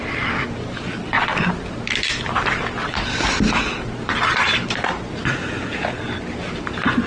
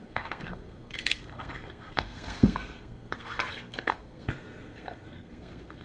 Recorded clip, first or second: first